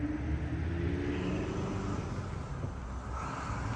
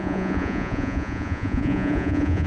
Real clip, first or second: first